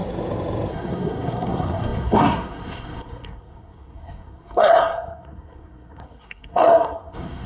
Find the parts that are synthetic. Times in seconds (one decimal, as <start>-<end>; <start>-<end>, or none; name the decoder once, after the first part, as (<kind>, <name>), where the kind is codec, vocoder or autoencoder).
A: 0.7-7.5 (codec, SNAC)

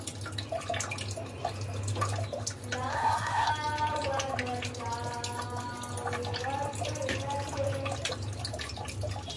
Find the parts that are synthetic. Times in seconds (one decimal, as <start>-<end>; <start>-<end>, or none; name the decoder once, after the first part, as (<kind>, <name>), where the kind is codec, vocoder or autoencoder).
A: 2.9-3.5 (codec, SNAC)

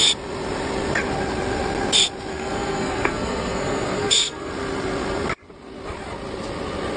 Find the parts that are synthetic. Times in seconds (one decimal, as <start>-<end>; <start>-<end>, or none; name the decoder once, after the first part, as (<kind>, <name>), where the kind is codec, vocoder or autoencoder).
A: 2.3-4.5 (codec, SNAC)